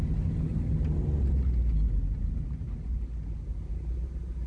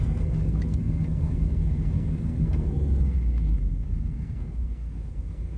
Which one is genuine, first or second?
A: first